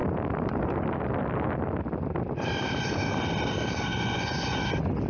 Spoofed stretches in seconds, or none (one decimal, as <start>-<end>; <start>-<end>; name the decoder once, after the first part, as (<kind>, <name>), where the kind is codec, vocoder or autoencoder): 3.9-4.6 (vocoder, Vocos)